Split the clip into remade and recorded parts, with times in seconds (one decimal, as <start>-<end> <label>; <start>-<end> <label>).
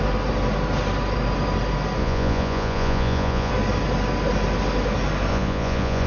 0.0-2.0 recorded; 2.0-3.5 remade; 3.5-5.3 recorded; 5.3-6.1 remade